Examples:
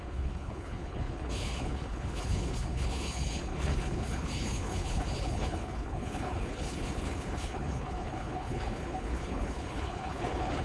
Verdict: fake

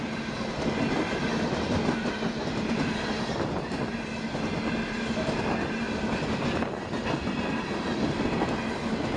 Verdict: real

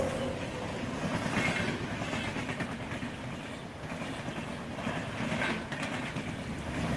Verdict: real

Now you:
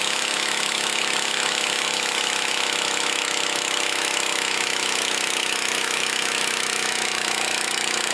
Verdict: fake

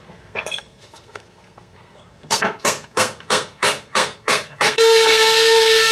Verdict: fake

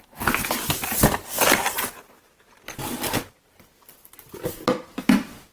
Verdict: real